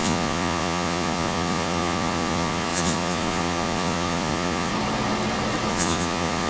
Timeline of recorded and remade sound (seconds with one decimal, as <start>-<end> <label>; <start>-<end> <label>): 0.0-4.7 remade; 4.7-5.7 recorded; 5.7-6.5 remade